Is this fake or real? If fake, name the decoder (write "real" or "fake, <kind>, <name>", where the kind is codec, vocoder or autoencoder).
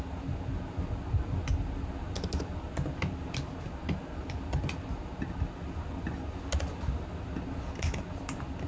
real